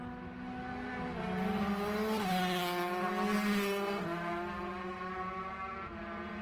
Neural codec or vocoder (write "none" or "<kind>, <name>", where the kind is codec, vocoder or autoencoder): none